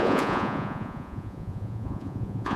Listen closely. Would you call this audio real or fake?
fake